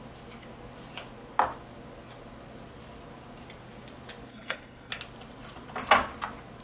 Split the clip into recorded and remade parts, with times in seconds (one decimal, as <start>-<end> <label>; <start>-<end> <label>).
0.0-4.3 recorded; 4.3-4.9 remade; 4.9-6.6 recorded